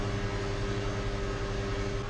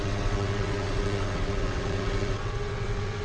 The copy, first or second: second